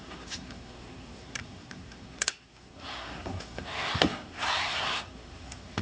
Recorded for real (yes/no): no